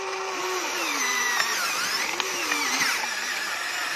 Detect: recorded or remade remade